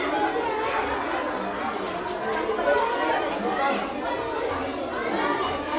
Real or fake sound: real